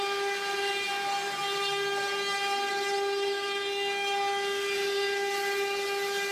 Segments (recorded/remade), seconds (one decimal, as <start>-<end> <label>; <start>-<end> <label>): 0.0-6.3 recorded